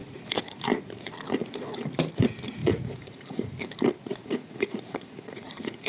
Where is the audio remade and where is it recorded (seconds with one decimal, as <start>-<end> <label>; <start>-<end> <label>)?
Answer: 0.0-0.7 remade; 0.7-2.6 recorded; 2.6-3.5 remade; 3.5-4.2 recorded; 4.2-5.9 remade

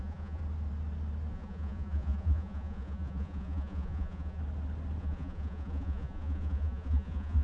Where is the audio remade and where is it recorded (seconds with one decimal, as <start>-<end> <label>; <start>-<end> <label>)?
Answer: 0.0-0.4 remade; 0.4-1.3 recorded; 1.3-4.4 remade; 4.4-5.0 recorded; 5.0-7.4 remade

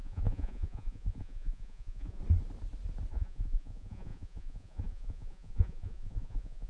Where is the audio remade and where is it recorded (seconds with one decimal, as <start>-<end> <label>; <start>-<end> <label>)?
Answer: 0.0-2.2 remade; 2.2-3.1 recorded; 3.1-6.7 remade

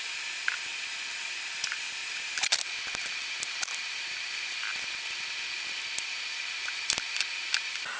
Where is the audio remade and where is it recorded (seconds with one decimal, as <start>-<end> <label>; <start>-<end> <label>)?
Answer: 0.0-8.0 recorded

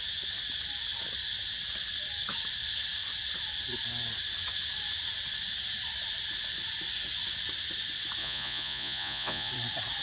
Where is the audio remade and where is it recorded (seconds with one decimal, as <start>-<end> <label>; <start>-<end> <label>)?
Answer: 0.0-8.2 recorded; 8.2-9.5 remade; 9.5-10.0 recorded